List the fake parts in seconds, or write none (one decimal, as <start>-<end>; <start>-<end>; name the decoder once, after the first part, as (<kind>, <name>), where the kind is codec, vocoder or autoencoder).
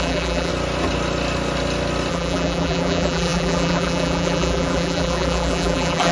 0.0-0.5 (vocoder, BigVGAN v2); 2.1-6.1